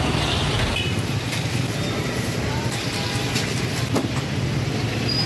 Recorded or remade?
recorded